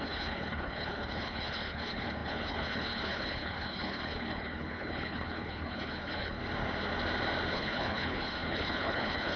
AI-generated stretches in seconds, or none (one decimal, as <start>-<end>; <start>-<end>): 0.0-6.4; 7.5-9.4